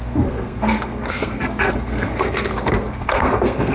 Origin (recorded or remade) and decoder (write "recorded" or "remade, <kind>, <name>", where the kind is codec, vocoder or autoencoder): remade, codec, SNAC